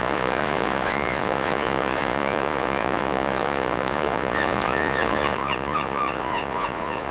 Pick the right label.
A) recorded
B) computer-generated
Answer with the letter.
B